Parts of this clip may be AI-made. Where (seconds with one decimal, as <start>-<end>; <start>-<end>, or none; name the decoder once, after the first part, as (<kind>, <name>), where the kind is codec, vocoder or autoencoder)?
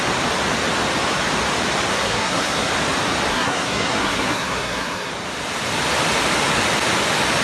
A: 1.9-2.7 (codec, SNAC); 3.3-5.1